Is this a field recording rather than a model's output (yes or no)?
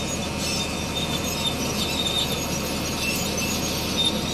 yes